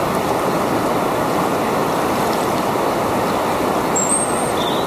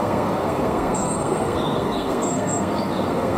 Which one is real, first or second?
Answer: first